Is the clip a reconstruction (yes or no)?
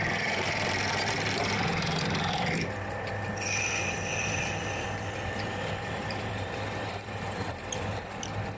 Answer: yes